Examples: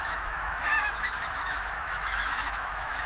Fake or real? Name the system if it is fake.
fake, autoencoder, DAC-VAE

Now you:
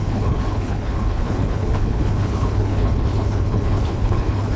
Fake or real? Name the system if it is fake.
fake, codec, HILCodec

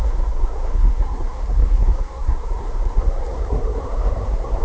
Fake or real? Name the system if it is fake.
fake, codec, SNAC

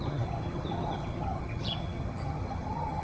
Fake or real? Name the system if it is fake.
fake, vocoder, HiFi-GAN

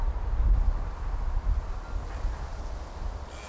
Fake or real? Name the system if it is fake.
real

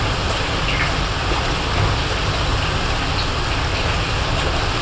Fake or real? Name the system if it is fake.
real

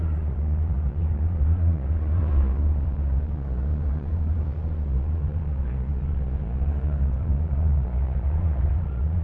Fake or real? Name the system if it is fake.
fake, vocoder, Vocos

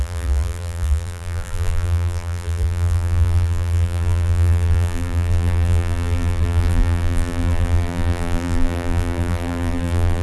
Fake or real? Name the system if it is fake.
fake, vocoder, BigVGAN v2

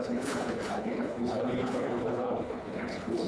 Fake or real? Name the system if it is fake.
fake, codec, HILCodec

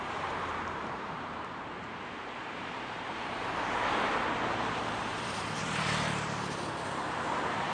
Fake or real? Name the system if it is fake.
fake, vocoder, BigVGAN v2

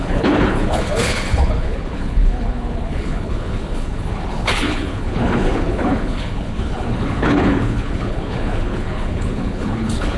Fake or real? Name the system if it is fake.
fake, codec, HILCodec